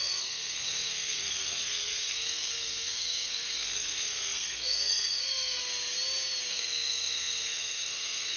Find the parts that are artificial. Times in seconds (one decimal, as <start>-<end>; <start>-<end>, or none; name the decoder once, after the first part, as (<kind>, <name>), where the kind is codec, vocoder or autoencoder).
0.0-5.6 (codec, SNAC); 6.5-8.4